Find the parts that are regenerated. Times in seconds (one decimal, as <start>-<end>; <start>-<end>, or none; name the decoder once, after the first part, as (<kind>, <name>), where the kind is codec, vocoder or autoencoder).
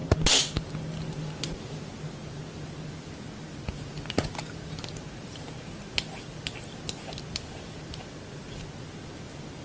none